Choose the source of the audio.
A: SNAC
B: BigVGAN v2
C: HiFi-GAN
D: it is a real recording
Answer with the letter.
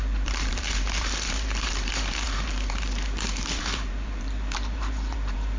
B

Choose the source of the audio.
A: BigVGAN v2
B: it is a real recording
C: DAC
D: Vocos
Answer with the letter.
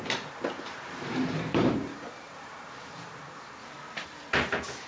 A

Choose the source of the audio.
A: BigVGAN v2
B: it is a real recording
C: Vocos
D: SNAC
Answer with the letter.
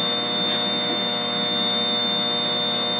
B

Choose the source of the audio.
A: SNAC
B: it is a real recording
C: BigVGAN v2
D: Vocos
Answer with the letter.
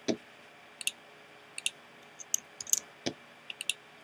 B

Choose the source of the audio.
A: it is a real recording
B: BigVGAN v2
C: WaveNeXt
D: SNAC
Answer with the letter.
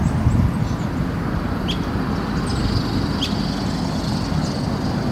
A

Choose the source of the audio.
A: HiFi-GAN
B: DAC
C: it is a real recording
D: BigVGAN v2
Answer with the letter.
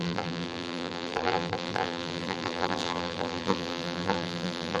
D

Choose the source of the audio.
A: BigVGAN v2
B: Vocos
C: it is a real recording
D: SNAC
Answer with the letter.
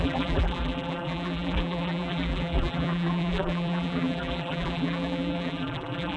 A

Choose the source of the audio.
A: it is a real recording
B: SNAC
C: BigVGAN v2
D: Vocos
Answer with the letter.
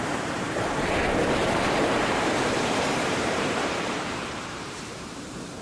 C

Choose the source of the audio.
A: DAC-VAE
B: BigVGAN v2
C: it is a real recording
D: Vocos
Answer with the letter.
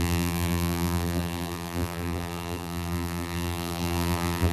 B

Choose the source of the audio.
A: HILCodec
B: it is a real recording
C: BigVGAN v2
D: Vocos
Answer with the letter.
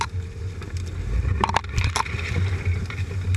B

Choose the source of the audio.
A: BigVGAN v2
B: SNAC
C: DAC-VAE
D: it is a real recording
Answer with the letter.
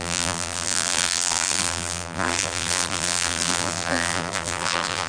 A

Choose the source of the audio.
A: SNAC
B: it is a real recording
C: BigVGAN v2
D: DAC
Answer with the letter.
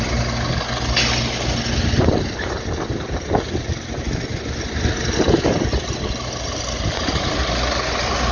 B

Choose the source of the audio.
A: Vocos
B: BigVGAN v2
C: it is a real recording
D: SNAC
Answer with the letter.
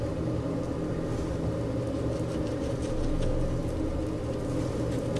C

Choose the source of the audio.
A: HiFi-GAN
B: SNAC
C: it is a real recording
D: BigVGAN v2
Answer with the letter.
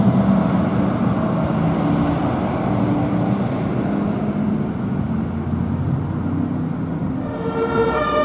C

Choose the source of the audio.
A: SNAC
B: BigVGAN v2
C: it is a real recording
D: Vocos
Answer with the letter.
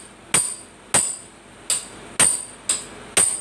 C